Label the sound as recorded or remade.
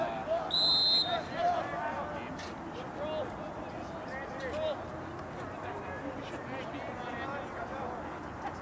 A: recorded